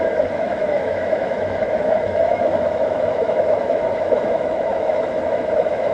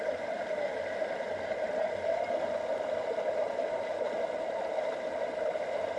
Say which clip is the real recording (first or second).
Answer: second